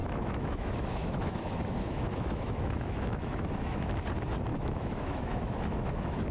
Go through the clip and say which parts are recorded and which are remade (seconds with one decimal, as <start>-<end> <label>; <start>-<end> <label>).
0.0-3.8 remade; 3.8-4.5 recorded; 4.5-6.3 remade